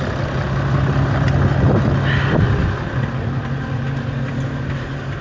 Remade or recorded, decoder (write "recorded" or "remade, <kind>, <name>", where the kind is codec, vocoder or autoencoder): recorded